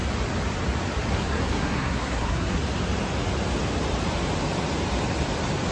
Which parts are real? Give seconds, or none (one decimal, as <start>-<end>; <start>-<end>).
0.0-1.1; 2.6-5.7